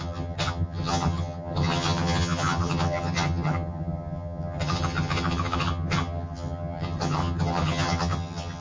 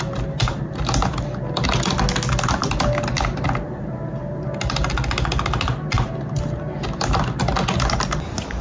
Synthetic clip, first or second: first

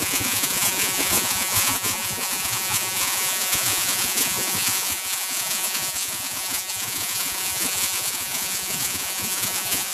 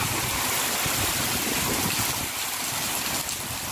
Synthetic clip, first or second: first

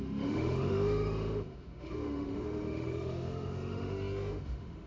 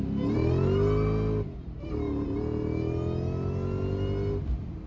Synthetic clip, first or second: first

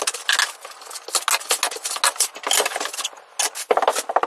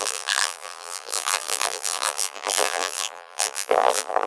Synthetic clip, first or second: second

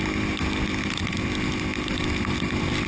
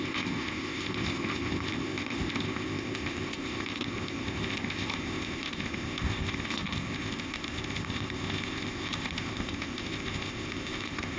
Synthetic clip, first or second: second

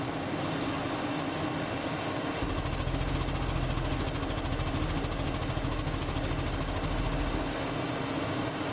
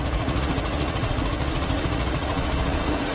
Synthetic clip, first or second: second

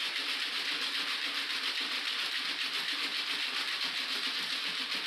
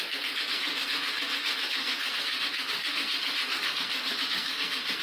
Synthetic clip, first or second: second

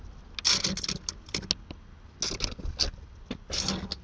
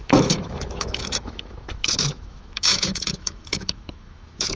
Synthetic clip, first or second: second